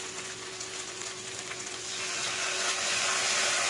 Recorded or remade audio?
remade